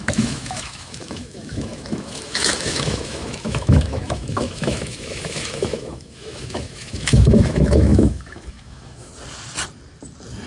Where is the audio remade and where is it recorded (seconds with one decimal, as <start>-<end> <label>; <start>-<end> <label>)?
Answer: 0.0-9.1 remade; 9.1-10.5 recorded